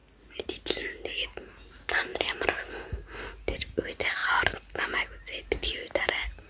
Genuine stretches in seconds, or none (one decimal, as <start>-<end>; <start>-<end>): 0.0-2.1; 2.7-6.5